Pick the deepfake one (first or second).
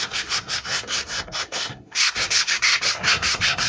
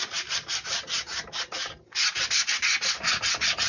first